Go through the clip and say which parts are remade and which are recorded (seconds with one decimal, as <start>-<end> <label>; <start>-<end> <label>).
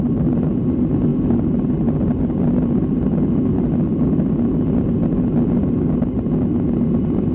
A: 0.0-7.3 recorded